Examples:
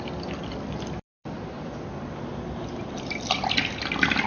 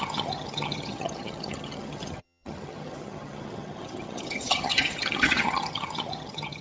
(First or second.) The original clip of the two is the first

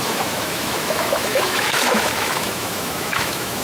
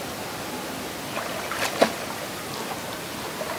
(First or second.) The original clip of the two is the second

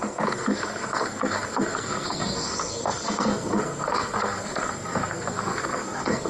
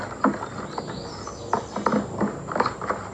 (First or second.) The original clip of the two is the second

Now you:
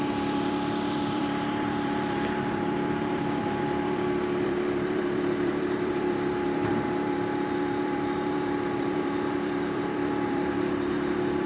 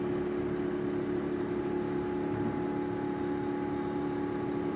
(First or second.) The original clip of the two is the second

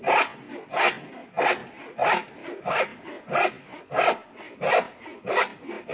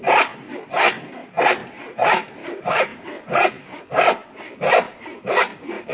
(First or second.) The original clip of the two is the first